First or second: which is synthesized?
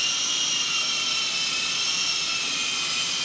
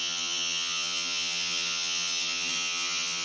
second